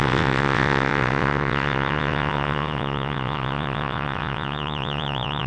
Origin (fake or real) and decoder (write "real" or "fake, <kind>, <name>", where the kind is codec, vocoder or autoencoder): fake, vocoder, WaveNeXt